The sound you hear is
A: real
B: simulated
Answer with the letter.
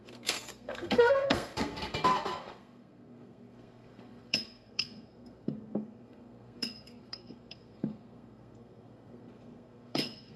B